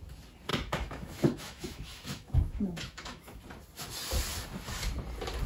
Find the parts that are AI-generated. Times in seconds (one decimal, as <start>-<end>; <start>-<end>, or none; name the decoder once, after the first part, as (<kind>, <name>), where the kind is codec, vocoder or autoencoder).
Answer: 0.5-3.4 (autoencoder, DAC-VAE)